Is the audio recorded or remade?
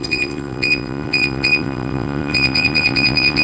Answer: remade